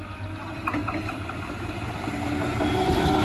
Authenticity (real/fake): real